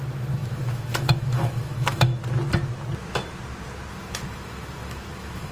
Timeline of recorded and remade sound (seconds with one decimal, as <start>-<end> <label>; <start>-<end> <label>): 0.0-2.1 remade; 2.1-3.9 recorded; 3.9-5.5 remade

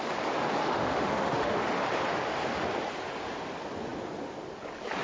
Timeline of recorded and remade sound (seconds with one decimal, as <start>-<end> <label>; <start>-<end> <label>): 0.0-0.6 recorded; 0.6-1.6 remade; 1.6-5.0 recorded

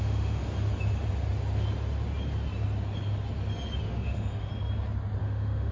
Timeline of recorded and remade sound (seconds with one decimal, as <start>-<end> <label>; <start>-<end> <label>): 0.0-0.4 remade; 0.4-3.8 recorded; 3.8-4.5 remade; 4.5-5.2 recorded; 5.2-5.7 remade

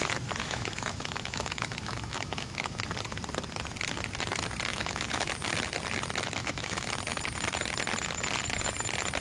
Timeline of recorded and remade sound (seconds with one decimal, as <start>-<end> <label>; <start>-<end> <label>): 0.0-0.4 recorded; 0.4-2.8 remade; 2.8-4.7 recorded; 4.7-5.3 remade; 5.3-6.4 recorded; 6.4-6.9 remade; 6.9-9.2 recorded

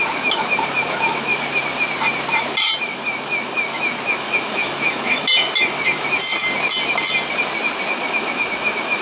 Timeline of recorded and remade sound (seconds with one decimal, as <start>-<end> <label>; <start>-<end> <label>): 0.0-1.3 remade; 1.3-2.8 recorded; 2.8-6.2 remade; 6.2-7.9 recorded; 7.9-9.0 remade

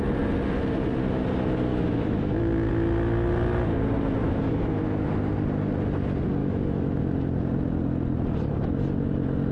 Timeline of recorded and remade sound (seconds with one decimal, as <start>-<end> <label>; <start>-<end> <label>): 0.0-1.7 recorded; 1.7-2.7 remade; 2.7-4.2 recorded; 4.2-4.8 remade; 4.8-6.4 recorded; 6.4-7.0 remade; 7.0-9.5 recorded